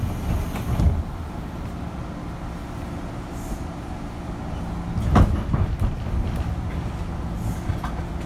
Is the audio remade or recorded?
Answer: recorded